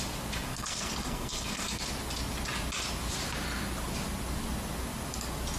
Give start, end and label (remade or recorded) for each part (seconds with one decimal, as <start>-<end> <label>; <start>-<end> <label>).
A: 0.0-0.5 recorded; 0.5-1.8 remade; 1.8-5.6 recorded

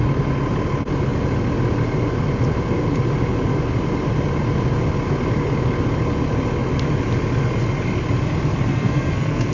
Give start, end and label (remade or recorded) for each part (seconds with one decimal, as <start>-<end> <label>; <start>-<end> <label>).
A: 0.0-8.7 recorded; 8.7-9.5 remade

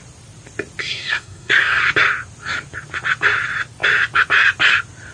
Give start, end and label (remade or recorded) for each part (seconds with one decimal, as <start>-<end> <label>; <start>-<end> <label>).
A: 0.0-0.8 recorded; 0.8-1.8 remade; 1.8-5.1 recorded